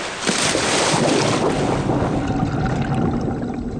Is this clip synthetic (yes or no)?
no